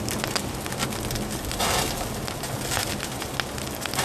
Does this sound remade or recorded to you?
recorded